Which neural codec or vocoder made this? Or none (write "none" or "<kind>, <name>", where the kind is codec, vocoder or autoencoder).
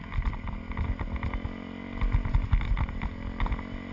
none